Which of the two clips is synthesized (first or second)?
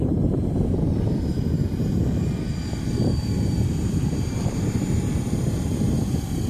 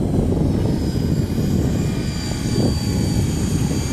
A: first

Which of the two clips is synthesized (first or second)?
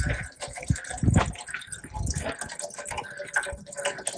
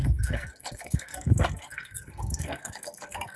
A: second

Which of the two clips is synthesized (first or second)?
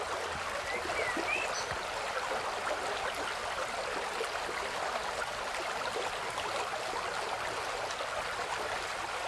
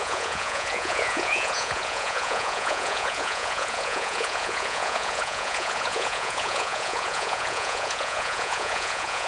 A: second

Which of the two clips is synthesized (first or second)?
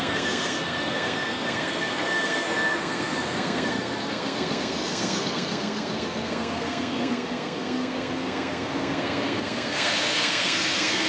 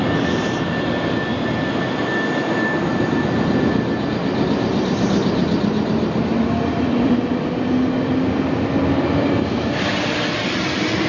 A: first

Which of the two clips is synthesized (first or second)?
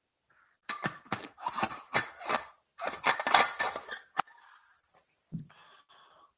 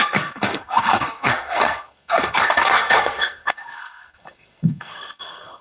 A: second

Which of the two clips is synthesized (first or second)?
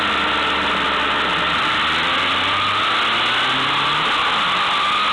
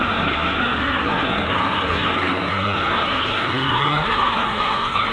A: second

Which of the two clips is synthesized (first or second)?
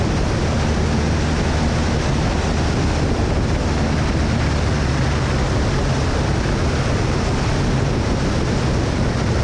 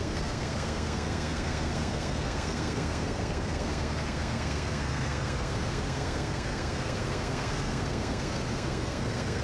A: second